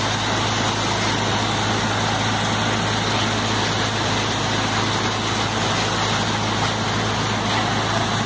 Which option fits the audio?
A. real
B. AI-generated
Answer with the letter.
A